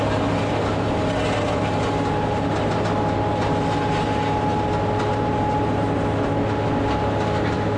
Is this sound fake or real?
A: real